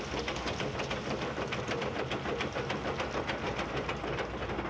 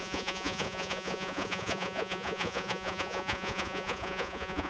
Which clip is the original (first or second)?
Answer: first